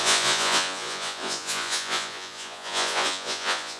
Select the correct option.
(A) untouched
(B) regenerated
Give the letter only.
B